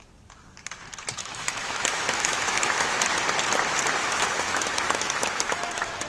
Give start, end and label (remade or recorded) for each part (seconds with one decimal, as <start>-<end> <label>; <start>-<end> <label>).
0.0-1.2 recorded; 1.2-3.0 remade; 3.0-4.0 recorded; 4.0-6.1 remade